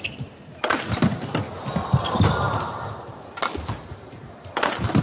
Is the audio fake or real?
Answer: real